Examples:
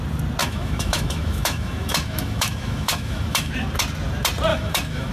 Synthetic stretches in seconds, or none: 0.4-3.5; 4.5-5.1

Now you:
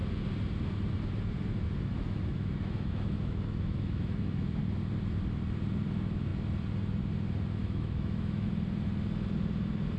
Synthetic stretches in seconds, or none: 1.9-4.6; 7.6-8.5

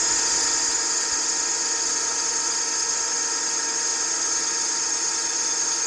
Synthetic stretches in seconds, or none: none

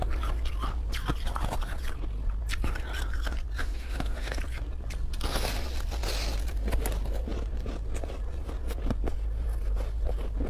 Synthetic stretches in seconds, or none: 3.6-4.4

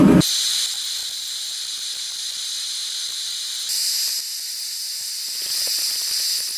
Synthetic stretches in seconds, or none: none

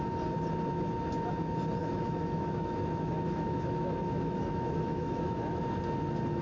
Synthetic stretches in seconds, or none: 1.8-5.6

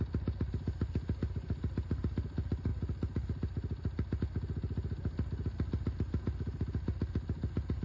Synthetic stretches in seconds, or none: none

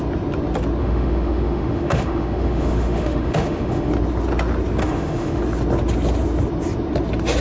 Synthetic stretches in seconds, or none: 0.8-3.9; 4.8-5.4